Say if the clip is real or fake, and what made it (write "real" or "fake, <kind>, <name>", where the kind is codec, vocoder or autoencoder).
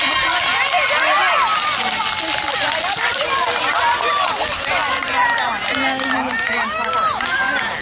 real